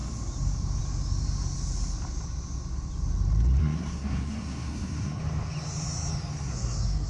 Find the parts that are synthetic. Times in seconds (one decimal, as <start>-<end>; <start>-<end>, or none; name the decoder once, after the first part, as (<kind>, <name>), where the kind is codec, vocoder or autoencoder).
3.6-5.2 (codec, SNAC); 6.5-7.1